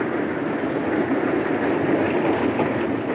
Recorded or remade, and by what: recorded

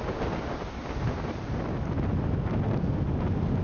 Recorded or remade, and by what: recorded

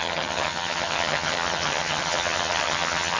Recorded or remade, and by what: remade, vocoder, HiFi-GAN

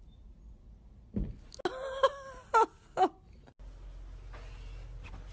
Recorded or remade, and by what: recorded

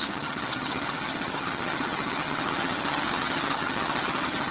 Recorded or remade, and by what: remade, vocoder, HiFi-GAN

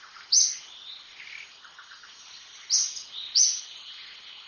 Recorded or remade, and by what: recorded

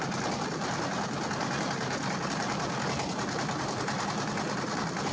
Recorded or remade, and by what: recorded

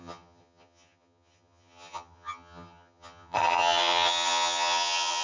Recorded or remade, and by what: remade, vocoder, HiFi-GAN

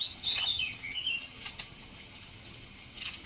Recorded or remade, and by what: remade, vocoder, HiFi-GAN